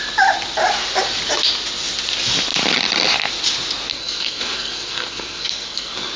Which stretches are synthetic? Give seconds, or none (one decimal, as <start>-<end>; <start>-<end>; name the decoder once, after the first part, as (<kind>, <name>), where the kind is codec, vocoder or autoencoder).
3.9-6.2 (codec, SNAC)

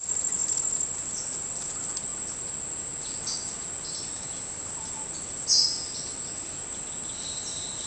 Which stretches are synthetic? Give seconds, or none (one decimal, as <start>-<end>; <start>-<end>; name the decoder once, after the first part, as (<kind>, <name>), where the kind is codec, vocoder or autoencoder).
none

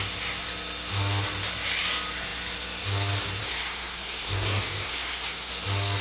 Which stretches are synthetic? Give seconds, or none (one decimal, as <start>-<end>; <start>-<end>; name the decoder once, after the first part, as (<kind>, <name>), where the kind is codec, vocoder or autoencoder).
3.4-5.5 (codec, SNAC)

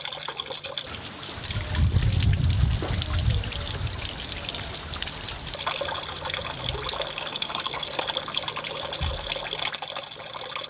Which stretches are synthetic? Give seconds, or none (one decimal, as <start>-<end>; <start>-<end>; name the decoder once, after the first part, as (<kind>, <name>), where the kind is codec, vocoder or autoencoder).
7.3-8.0 (codec, SNAC)